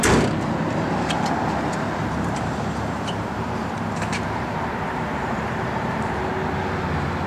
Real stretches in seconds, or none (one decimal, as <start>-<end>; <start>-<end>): 0.0-2.0; 6.3-7.3